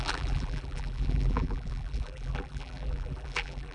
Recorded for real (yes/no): no